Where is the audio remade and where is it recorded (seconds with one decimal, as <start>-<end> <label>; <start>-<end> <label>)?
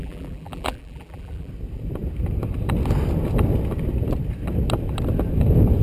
0.0-1.5 remade; 1.5-5.8 recorded